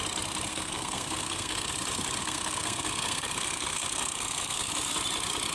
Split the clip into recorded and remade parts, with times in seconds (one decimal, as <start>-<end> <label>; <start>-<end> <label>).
0.0-0.5 recorded; 0.5-1.7 remade; 1.7-2.2 recorded; 2.2-4.7 remade; 4.7-5.5 recorded